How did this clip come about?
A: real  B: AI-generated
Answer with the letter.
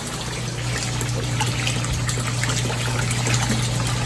A